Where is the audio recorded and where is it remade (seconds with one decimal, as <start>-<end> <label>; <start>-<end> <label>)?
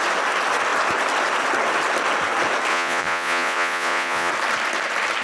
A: 0.0-2.7 recorded; 2.7-4.3 remade; 4.3-5.2 recorded